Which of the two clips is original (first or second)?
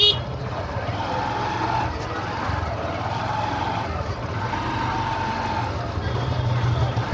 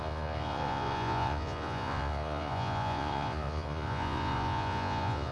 first